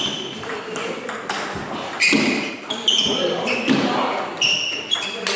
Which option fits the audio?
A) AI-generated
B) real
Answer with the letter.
B